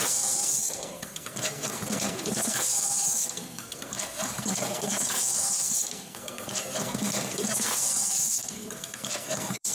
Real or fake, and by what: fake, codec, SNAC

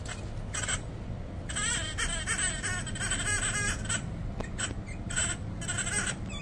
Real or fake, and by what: real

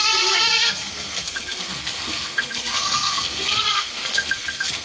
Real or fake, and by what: fake, codec, SNAC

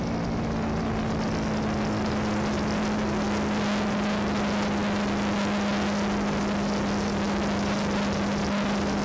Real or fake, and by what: real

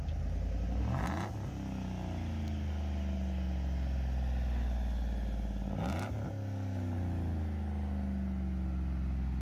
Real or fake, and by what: real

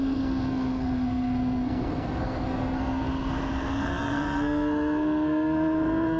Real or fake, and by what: fake, codec, SNAC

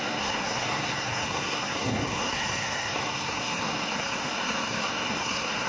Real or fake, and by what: fake, codec, SNAC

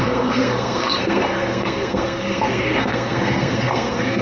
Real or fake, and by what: fake, codec, SNAC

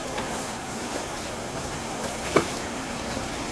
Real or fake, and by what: fake, codec, SNAC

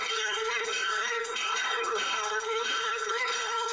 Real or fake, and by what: fake, codec, SNAC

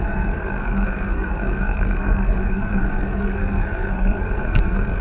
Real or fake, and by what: fake, codec, SNAC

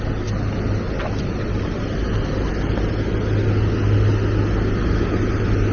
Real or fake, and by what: real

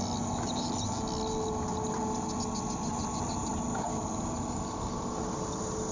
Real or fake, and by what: real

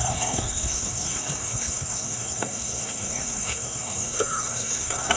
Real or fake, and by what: fake, codec, SNAC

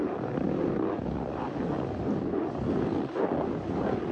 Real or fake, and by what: real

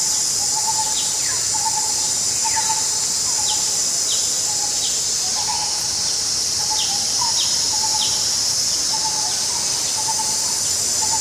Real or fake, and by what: real